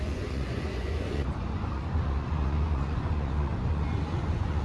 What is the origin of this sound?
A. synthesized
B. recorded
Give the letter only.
A